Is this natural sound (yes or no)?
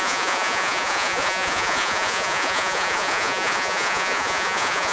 no